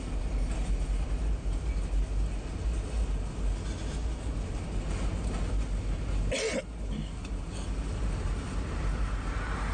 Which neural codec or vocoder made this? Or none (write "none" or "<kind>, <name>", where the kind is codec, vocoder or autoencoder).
none